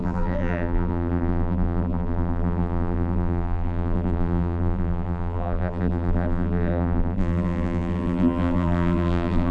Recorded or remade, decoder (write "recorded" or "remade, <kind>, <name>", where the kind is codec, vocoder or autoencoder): remade, vocoder, BigVGAN v2